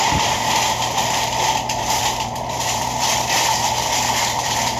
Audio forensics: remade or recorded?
remade